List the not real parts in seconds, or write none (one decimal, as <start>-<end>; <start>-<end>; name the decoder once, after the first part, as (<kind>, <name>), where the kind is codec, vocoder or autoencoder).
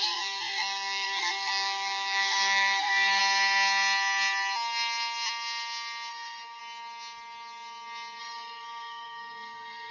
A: 0.0-3.2 (codec, SNAC); 6.1-6.6; 8.2-9.9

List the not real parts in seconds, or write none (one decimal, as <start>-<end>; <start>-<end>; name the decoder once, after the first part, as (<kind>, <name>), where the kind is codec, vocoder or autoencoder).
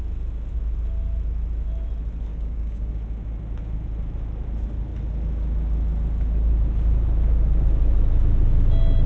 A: 2.3-2.9 (codec, DAC)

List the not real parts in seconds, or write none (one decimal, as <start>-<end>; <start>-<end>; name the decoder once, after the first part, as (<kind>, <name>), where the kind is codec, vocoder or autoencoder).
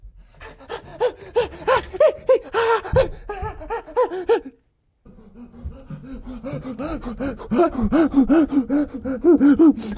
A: none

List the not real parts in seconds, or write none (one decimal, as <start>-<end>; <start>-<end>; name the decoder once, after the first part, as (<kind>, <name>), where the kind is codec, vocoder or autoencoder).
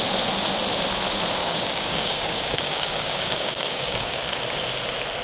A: 1.4-4.4 (codec, DAC)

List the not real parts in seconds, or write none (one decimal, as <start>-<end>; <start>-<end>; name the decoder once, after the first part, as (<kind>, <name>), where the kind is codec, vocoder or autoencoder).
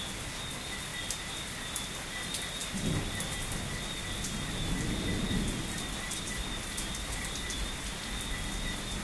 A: none